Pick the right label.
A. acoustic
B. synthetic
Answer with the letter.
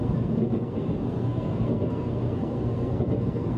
B